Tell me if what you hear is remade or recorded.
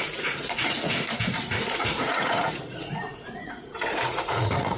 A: remade